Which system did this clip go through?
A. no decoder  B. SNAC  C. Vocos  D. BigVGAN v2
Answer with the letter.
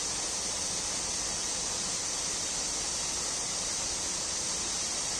A